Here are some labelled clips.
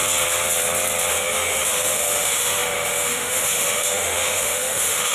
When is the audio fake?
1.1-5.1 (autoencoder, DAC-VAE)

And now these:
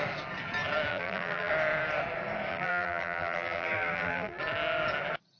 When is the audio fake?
0.9-1.5 (vocoder, BigVGAN v2); 2.5-4.4

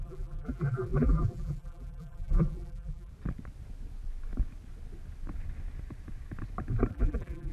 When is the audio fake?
0.0-3.1 (vocoder, BigVGAN v2); 6.9-7.5

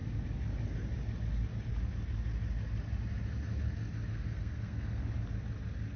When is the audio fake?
4.1-5.1 (codec, SNAC)

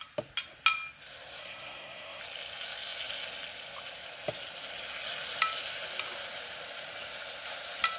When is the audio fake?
1.4-2.2 (codec, SNAC)